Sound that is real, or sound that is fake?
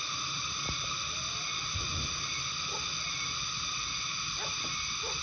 real